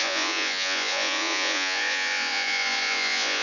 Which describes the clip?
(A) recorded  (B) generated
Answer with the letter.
B